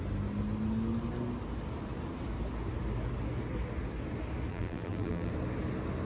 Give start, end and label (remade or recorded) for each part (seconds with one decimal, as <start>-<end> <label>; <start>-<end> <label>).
0.0-4.5 recorded; 4.5-5.3 remade; 5.3-6.1 recorded